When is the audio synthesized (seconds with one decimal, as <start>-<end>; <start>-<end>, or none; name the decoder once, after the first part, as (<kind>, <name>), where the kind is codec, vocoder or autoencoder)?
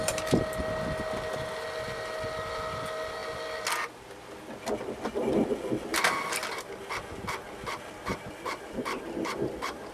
none